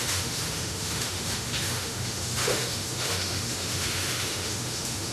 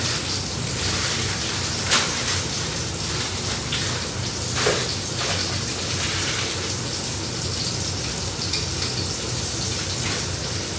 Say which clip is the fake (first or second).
first